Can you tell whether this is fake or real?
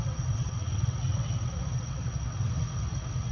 fake